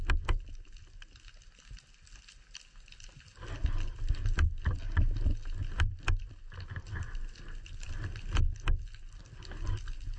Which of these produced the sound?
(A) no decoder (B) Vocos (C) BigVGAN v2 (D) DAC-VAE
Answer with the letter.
A